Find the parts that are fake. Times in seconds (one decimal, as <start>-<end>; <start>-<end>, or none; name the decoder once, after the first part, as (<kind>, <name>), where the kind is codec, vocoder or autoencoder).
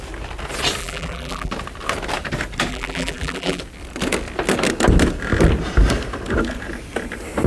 0.8-1.5 (vocoder, BigVGAN v2); 2.7-3.6